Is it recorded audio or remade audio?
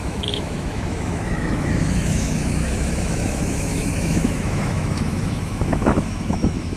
remade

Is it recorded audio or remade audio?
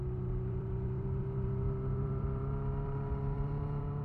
remade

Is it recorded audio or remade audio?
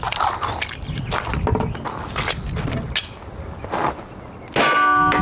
recorded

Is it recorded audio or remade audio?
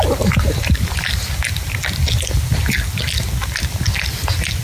recorded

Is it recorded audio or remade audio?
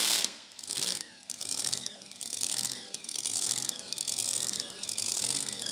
remade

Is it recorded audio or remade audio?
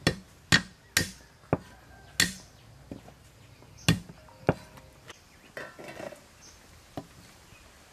recorded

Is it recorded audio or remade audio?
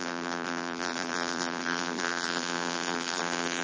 remade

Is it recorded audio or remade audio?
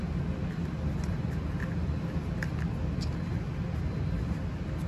recorded